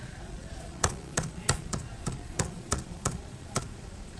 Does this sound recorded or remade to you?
remade